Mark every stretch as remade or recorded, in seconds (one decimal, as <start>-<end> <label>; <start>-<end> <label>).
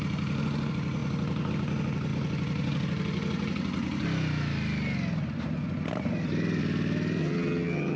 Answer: 0.0-7.2 recorded; 7.2-8.0 remade